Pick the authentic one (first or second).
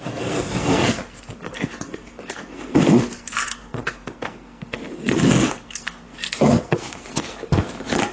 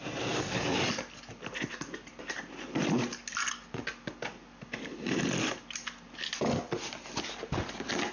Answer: second